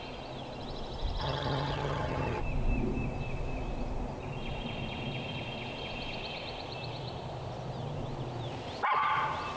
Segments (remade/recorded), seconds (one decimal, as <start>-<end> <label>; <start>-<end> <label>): 0.0-1.2 recorded; 1.2-2.4 remade; 2.4-9.6 recorded